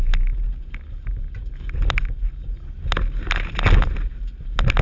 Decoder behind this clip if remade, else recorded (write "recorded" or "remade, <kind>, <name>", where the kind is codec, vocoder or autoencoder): recorded